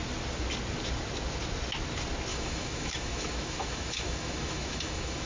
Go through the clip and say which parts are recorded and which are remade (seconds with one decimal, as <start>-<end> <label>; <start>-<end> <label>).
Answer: 0.0-2.3 recorded; 2.3-5.3 remade